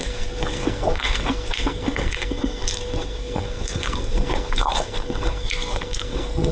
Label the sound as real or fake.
fake